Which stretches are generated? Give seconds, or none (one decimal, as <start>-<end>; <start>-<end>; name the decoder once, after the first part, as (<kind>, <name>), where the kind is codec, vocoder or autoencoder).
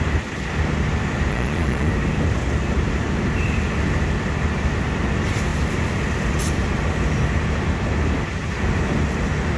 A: 1.3-1.9 (vocoder, Vocos)